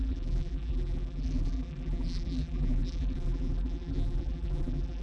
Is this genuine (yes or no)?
no